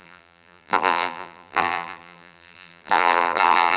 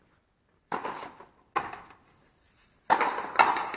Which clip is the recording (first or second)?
second